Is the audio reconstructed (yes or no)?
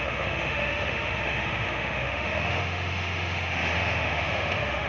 yes